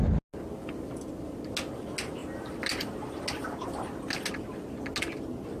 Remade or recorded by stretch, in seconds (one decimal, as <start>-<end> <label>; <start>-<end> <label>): 0.0-5.6 recorded